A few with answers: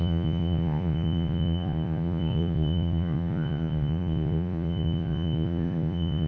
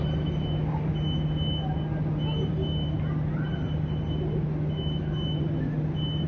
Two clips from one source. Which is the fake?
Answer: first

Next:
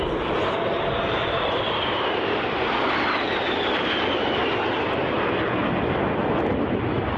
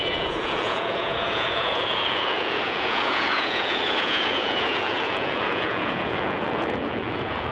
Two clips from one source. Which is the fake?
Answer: second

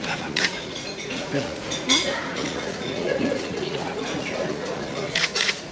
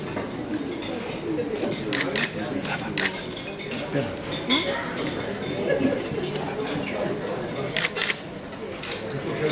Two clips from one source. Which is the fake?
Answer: first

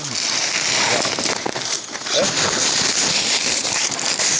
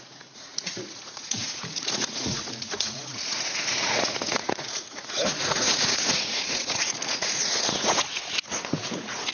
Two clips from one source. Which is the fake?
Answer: second